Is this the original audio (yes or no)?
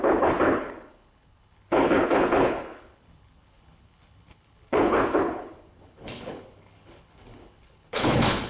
no